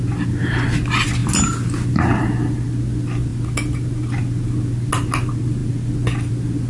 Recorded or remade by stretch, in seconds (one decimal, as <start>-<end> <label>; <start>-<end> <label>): 0.0-6.7 recorded